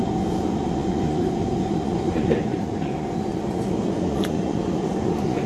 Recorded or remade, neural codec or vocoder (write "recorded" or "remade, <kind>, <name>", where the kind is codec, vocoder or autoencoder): remade, vocoder, Vocos